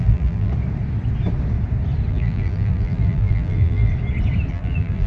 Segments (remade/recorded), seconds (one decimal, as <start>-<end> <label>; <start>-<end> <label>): 0.0-0.5 remade; 0.5-2.1 recorded; 2.1-3.9 remade; 3.9-4.5 recorded; 4.5-5.1 remade